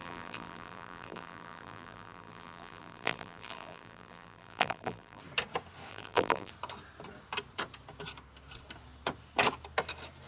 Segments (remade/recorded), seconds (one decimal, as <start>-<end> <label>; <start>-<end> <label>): 0.0-5.2 remade; 5.2-5.9 recorded; 5.9-6.5 remade; 6.5-10.3 recorded